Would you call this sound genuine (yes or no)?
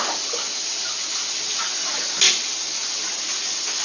yes